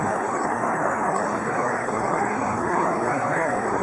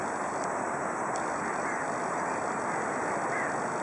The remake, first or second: first